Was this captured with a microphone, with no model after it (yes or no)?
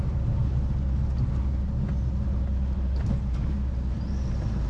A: yes